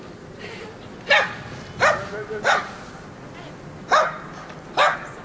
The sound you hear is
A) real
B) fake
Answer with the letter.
A